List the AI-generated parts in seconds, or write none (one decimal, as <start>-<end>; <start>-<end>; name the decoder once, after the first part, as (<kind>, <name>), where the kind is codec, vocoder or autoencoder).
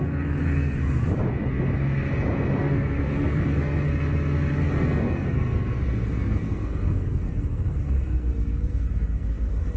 0.0-1.0 (codec, SNAC); 2.6-3.9; 4.6-9.8